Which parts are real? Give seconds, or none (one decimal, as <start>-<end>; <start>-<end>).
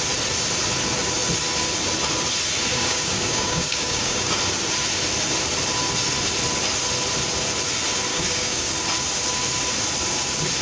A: 0.0-2.7; 4.4-8.1; 8.7-10.6